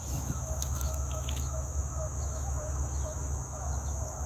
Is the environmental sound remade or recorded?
remade